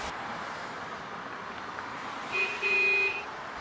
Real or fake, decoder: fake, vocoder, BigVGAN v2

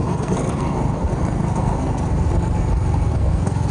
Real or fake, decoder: fake, codec, SNAC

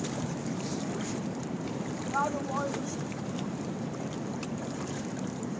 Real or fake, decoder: fake, vocoder, BigVGAN v2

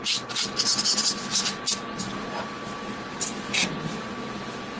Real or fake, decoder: real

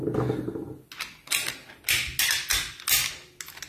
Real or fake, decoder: real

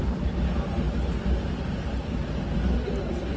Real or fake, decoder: real